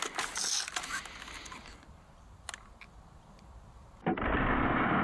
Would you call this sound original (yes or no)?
yes